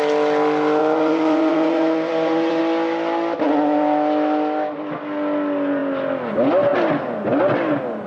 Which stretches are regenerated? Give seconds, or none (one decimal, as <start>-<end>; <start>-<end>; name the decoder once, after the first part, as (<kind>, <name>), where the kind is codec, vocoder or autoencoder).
0.8-2.6 (vocoder, Vocos)